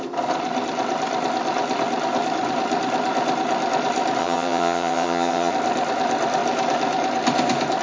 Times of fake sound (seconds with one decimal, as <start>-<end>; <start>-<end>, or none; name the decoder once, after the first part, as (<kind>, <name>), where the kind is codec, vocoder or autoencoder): 4.2-5.5 (vocoder, HiFi-GAN)